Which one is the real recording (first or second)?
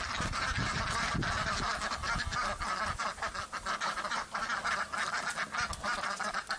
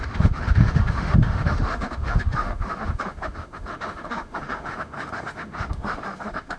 first